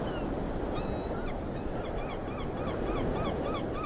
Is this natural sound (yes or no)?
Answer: yes